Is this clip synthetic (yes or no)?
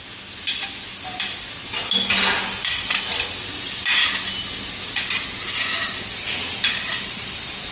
no